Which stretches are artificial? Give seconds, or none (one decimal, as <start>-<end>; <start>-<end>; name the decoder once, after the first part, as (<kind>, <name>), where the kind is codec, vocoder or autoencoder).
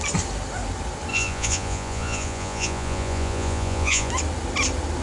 1.1-4.1 (vocoder, Vocos)